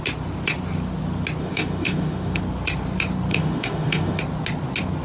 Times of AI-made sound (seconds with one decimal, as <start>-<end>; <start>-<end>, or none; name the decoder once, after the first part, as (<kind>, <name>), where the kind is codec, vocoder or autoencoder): 1.4-2.4 (autoencoder, DAC-VAE); 3.3-4.2